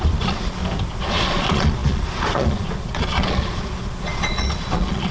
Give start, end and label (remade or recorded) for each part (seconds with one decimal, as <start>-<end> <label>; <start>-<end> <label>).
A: 0.0-0.6 remade; 0.6-1.1 recorded; 1.1-5.1 remade

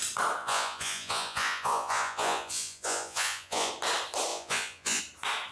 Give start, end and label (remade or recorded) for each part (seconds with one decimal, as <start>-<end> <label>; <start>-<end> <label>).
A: 0.0-0.4 recorded; 0.4-3.7 remade; 3.7-4.3 recorded; 4.3-5.0 remade; 5.0-5.5 recorded

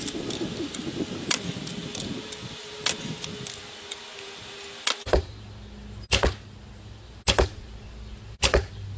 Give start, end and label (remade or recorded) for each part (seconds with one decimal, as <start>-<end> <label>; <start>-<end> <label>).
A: 0.0-9.0 recorded

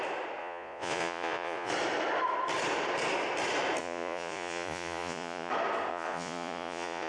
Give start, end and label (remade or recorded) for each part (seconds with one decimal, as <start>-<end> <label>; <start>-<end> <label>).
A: 0.0-0.4 recorded; 0.4-1.7 remade; 1.7-3.8 recorded; 3.8-5.5 remade; 5.5-5.9 recorded; 5.9-7.1 remade

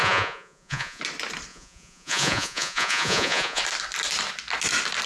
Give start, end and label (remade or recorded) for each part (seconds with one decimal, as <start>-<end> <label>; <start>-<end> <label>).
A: 0.0-1.0 remade; 1.0-1.5 recorded; 1.5-3.6 remade; 3.6-5.1 recorded

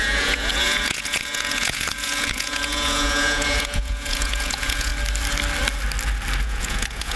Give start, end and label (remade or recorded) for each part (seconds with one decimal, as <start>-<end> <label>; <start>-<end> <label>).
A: 0.0-4.9 remade; 4.9-6.4 recorded; 6.4-7.2 remade

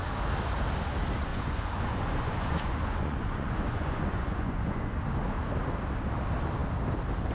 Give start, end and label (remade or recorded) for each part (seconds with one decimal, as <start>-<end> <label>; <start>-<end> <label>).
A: 0.0-1.3 recorded; 1.3-4.9 remade; 4.9-7.3 recorded

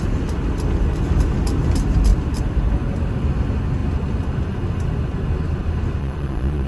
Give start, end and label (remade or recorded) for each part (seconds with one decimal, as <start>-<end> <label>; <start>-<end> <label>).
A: 0.0-6.0 recorded; 6.0-6.7 remade